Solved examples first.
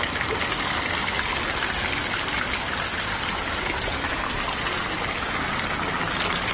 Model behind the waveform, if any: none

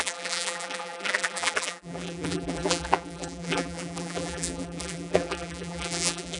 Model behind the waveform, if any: vocoder, BigVGAN v2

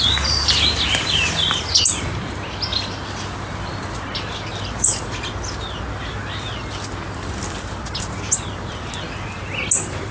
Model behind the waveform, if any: none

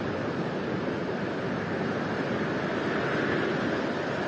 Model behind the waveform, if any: none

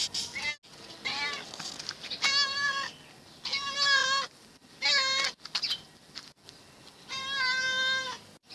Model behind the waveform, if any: none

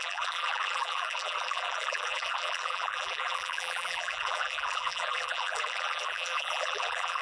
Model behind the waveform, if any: vocoder, BigVGAN v2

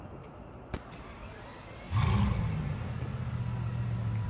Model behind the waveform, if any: none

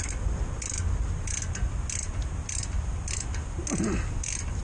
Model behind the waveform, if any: none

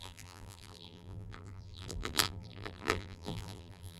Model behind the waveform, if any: vocoder, BigVGAN v2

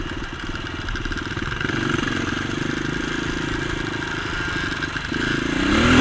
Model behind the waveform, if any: none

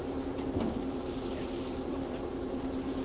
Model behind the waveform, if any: vocoder, BigVGAN v2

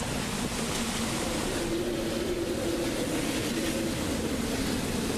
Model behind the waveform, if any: none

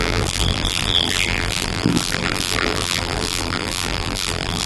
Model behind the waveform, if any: vocoder, BigVGAN v2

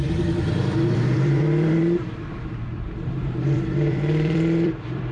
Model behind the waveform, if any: vocoder, BigVGAN v2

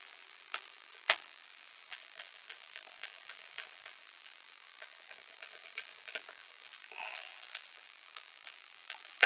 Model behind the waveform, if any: vocoder, BigVGAN v2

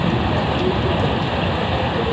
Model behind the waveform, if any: none